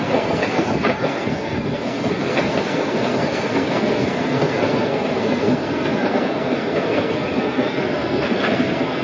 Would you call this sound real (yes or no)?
no